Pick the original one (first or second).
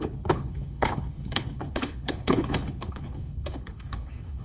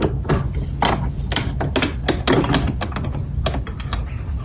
second